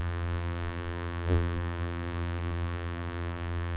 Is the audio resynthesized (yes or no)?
yes